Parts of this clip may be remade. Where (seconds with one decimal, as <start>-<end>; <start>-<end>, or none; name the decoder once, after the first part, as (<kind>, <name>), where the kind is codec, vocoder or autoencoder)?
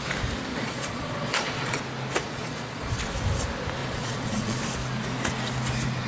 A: 0.5-1.8 (vocoder, Vocos); 2.2-3.0; 3.8-4.6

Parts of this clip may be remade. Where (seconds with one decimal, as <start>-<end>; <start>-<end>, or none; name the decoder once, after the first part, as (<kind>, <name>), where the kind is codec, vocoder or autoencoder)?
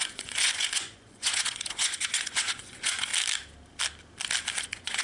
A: 0.0-3.1 (vocoder, Vocos); 4.6-5.0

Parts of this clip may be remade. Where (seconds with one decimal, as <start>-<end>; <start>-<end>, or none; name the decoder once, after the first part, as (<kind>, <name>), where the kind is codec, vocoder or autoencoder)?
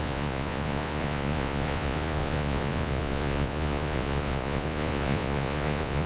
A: 0.0-6.1 (vocoder, Vocos)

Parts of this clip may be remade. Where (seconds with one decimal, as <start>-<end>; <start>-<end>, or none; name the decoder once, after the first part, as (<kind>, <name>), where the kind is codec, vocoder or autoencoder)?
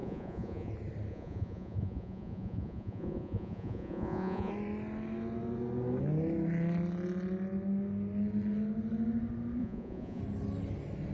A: 0.0-0.7 (vocoder, Vocos); 1.1-4.5; 9.6-10.2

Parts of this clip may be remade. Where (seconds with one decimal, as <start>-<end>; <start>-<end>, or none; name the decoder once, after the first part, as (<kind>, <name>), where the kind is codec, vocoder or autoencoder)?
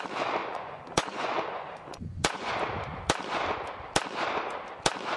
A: 0.4-2.5 (vocoder, Vocos)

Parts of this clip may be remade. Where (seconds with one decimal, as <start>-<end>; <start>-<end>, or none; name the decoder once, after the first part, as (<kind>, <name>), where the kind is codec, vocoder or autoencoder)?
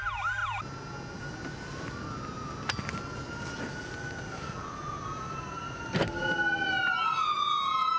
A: none